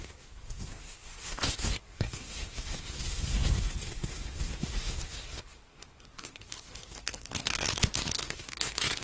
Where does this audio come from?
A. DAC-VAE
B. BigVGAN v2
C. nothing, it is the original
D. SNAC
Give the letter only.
D